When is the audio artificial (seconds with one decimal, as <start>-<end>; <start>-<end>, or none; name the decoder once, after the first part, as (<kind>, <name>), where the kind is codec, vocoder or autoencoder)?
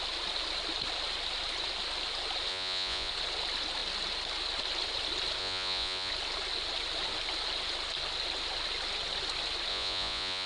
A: 2.5-3.1 (vocoder, Vocos); 5.4-6.1; 9.7-10.5